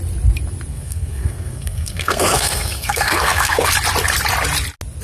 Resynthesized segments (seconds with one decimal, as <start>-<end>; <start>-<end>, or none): 0.7-3.7